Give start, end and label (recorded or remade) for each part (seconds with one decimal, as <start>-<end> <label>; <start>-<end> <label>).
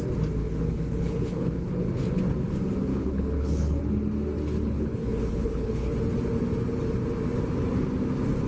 0.0-0.4 recorded; 0.4-1.7 remade; 1.7-2.9 recorded; 2.9-3.8 remade; 3.8-4.4 recorded; 4.4-5.9 remade; 5.9-8.5 recorded